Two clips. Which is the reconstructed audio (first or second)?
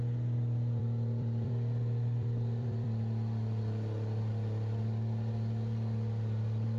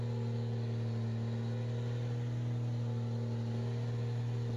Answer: first